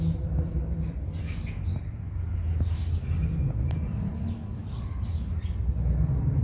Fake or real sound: real